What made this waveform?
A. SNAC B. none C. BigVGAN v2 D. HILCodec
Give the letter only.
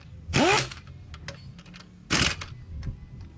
B